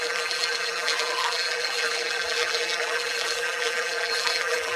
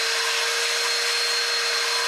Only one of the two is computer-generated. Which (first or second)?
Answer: first